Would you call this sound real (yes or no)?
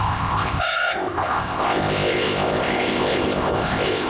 no